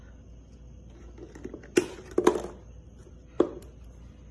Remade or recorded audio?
recorded